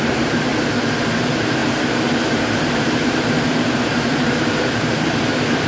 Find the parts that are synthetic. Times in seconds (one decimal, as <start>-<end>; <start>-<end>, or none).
0.0-0.5; 1.2-5.7